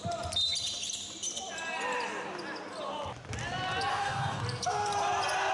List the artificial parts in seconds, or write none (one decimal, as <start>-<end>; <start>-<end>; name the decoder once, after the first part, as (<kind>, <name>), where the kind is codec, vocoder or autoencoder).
3.9-4.4 (codec, DAC)